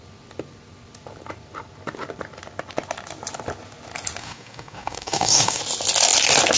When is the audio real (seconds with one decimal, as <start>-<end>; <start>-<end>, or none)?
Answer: 0.0-4.2; 5.6-6.6